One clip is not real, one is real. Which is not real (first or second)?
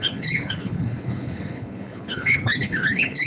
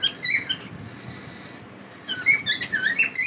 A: first